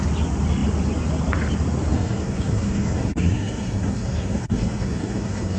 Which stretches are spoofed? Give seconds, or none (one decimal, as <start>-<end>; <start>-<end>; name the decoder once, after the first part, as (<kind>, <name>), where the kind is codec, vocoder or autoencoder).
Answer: 1.9-5.6 (codec, SNAC)